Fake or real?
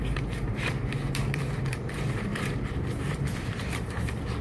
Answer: fake